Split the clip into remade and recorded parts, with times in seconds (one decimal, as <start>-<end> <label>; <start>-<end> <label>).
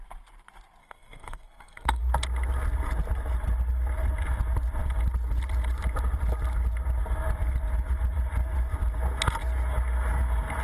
0.0-0.8 recorded; 0.8-2.0 remade; 2.0-10.6 recorded